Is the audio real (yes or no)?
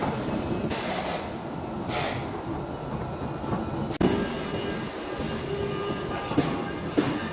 yes